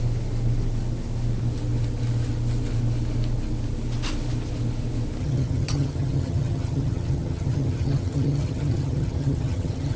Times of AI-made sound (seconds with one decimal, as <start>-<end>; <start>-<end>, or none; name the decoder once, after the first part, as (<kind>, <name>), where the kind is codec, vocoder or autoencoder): 5.2-10.0 (vocoder, HiFi-GAN)